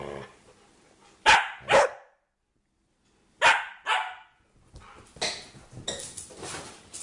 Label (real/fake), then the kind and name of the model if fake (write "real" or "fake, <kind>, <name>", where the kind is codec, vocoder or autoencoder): real